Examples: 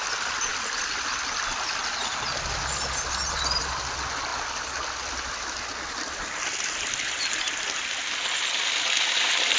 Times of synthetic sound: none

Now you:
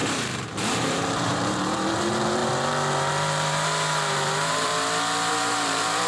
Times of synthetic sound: 0.0-4.7 (vocoder, BigVGAN v2); 5.3-6.1

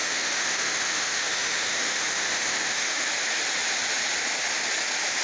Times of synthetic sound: 0.0-3.1 (autoencoder, DAC-VAE)

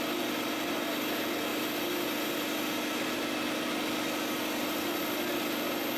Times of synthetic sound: none

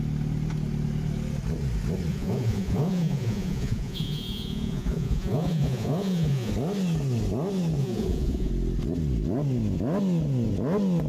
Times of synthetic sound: 2.1-6.5 (vocoder, Vocos); 7.8-8.5

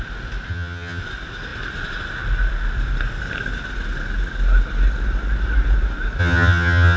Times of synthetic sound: 0.5-1.0 (vocoder, HiFi-GAN); 6.2-7.0

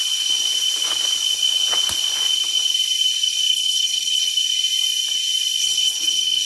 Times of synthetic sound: 3.5-4.3 (codec, HILCodec); 5.6-6.4